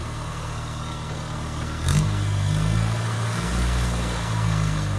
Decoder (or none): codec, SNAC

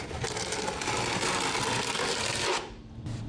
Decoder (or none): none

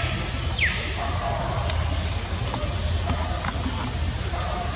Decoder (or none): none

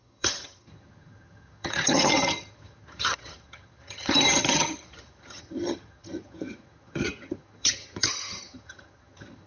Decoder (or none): vocoder, HiFi-GAN